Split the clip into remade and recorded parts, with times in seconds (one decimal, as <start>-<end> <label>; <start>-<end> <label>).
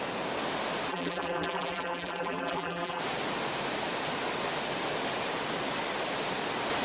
0.0-0.9 recorded; 0.9-3.0 remade; 3.0-6.8 recorded